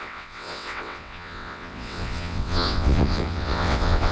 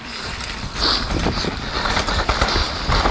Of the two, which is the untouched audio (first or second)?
second